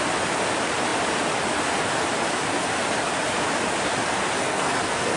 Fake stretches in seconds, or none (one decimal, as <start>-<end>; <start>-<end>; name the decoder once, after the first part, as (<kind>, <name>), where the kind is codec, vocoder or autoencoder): 4.4-5.2 (codec, SNAC)